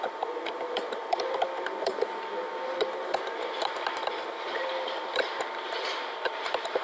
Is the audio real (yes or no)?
no